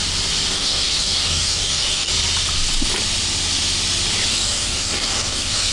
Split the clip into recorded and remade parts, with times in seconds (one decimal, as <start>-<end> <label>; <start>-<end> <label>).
0.0-0.5 recorded; 0.5-2.1 remade; 2.1-4.3 recorded; 4.3-5.7 remade